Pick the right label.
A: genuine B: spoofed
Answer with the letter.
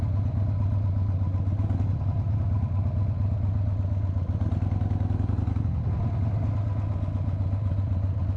A